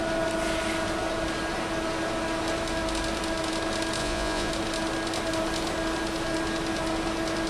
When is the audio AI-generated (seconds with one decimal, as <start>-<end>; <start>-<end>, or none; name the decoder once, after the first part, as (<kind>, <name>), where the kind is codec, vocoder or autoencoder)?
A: 4.0-4.5 (vocoder, Vocos)